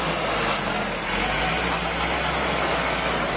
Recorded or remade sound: recorded